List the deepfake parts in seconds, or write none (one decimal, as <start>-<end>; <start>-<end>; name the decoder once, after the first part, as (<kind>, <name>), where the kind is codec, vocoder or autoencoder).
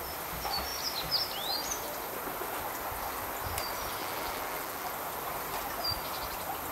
4.0-4.9 (vocoder, BigVGAN v2)